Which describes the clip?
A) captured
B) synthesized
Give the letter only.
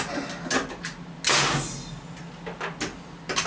A